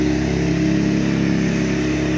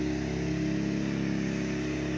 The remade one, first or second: first